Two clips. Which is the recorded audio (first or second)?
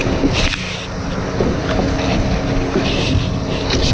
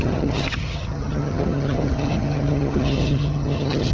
first